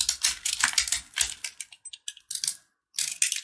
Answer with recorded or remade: recorded